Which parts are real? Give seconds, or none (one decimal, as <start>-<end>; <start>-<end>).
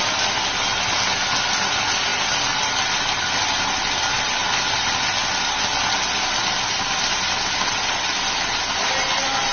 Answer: 0.0-9.5